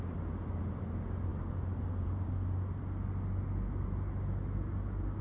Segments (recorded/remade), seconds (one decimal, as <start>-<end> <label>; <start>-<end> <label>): 0.0-1.3 recorded; 1.3-2.3 remade; 2.3-5.2 recorded